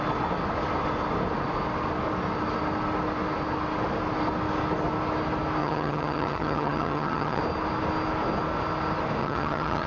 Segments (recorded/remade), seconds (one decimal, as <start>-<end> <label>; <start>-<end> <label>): 0.0-5.6 recorded; 5.6-7.4 remade; 7.4-9.2 recorded; 9.2-9.9 remade